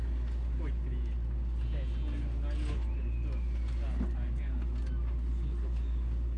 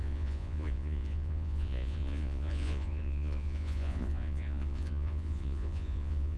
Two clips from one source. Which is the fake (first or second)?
second